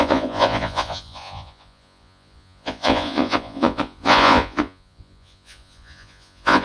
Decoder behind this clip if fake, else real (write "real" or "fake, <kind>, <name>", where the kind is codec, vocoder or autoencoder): fake, vocoder, Vocos